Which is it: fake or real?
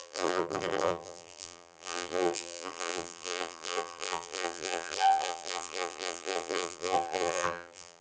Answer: fake